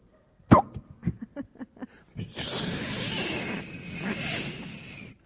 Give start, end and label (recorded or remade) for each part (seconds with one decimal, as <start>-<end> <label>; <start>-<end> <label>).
0.0-5.3 recorded